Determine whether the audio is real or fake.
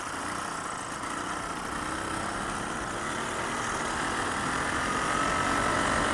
real